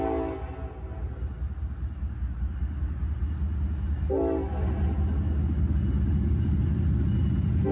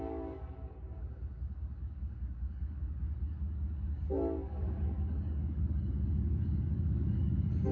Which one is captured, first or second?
first